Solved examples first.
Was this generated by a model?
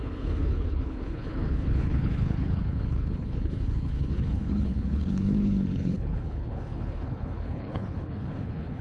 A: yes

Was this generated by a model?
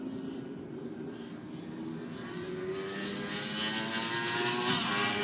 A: no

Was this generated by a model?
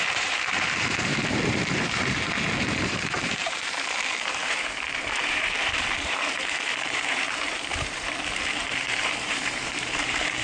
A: yes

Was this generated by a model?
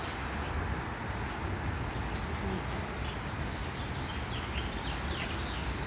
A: no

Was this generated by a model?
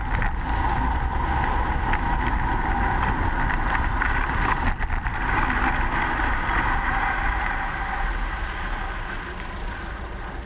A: no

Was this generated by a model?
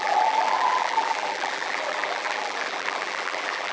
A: yes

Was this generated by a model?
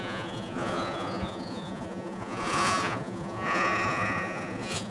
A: yes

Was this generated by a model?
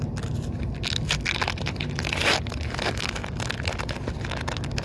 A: no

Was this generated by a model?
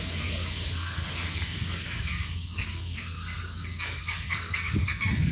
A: yes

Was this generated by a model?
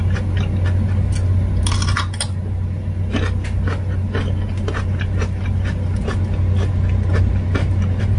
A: no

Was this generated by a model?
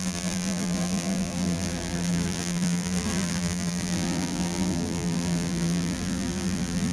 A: yes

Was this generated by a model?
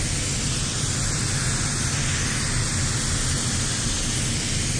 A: no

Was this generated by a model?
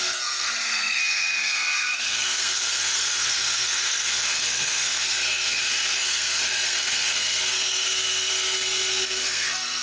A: yes